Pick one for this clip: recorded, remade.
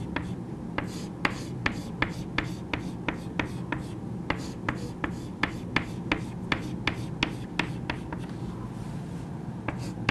recorded